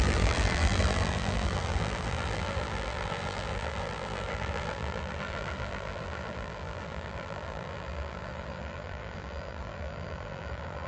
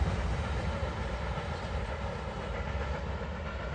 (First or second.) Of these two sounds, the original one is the second